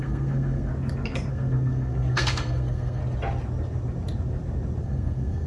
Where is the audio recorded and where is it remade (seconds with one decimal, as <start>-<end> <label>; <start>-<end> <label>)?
0.0-0.7 remade; 0.7-1.3 recorded; 1.3-3.0 remade; 3.0-4.8 recorded; 4.8-5.5 remade